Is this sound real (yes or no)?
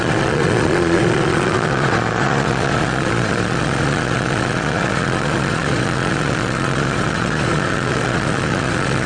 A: no